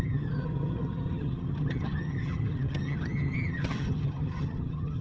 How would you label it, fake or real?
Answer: fake